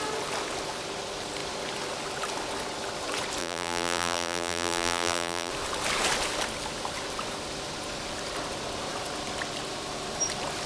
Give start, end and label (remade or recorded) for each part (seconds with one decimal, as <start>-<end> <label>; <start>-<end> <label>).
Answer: 0.0-3.4 recorded; 3.4-5.5 remade; 5.5-10.7 recorded